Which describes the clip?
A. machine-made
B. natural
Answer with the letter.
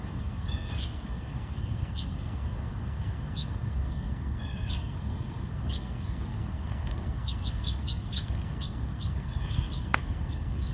A